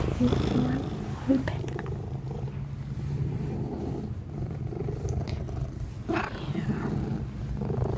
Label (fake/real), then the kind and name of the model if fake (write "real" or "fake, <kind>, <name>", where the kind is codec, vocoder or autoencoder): real